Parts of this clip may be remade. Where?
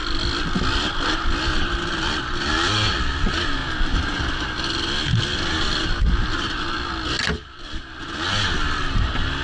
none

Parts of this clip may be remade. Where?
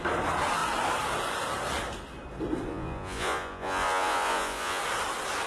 2.7-4.8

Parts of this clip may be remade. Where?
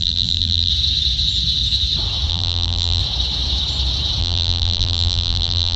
0.0-0.7; 2.3-3.0; 4.2-5.8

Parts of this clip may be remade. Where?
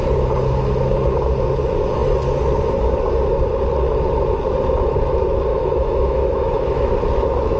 5.5-6.9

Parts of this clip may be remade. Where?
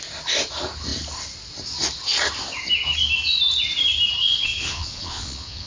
4.2-5.7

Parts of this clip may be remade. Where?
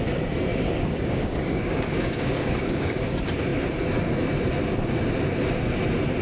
0.5-3.1